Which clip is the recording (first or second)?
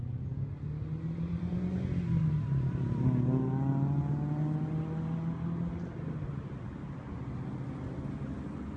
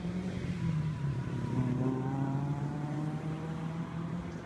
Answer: first